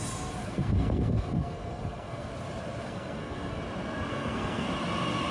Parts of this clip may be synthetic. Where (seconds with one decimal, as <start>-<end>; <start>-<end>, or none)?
0.4-2.3; 2.8-3.6; 4.1-4.7